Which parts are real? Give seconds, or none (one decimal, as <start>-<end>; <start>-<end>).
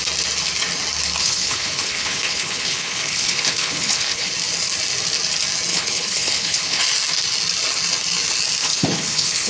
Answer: 0.0-1.2; 4.3-5.7; 6.8-8.6